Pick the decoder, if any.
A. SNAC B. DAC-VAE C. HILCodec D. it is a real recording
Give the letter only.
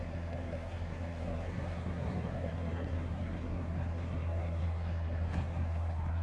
A